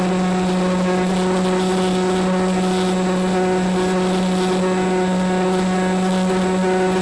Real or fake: real